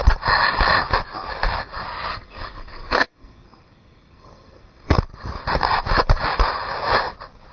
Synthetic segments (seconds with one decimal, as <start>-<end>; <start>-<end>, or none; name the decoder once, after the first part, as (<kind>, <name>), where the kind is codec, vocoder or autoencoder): 2.1-5.0 (codec, SNAC)